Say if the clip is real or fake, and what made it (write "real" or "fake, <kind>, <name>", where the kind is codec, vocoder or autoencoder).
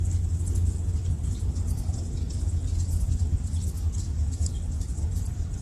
real